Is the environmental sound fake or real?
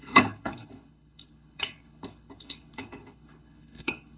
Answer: fake